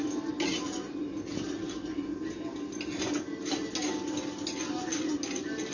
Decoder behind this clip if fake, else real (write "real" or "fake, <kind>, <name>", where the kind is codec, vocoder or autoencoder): real